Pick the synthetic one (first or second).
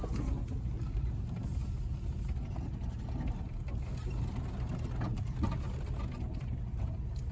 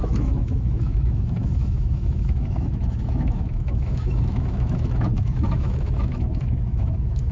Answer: second